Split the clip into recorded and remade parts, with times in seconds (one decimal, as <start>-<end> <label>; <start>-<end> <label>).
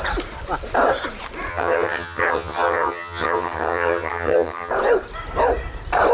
0.0-1.5 recorded; 1.5-4.7 remade; 4.7-6.1 recorded